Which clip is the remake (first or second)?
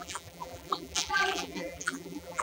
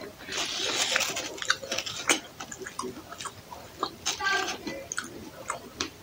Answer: first